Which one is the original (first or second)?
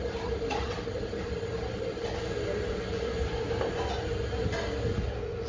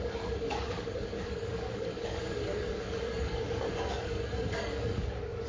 first